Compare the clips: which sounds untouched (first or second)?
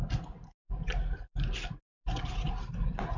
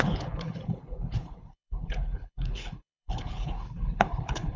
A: first